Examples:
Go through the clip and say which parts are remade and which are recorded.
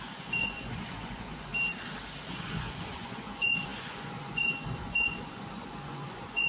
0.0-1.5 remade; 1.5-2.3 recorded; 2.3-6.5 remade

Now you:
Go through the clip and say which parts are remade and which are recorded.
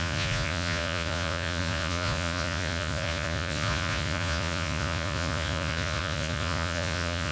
0.0-7.3 remade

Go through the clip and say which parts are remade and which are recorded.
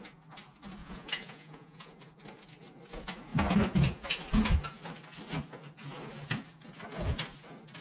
0.0-0.8 recorded; 0.8-2.0 remade; 2.0-7.8 recorded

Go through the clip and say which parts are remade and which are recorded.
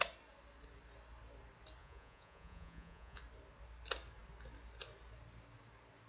0.0-1.8 recorded; 1.8-3.2 remade; 3.2-6.1 recorded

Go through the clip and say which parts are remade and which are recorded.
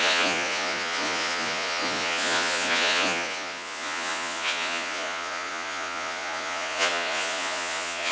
0.0-8.1 remade